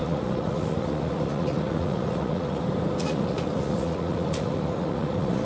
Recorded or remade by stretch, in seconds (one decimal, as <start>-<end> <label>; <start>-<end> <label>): 0.0-2.6 remade; 2.6-3.0 recorded; 3.0-5.5 remade